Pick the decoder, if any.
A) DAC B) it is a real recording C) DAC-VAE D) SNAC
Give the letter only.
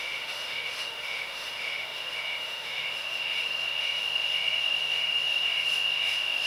C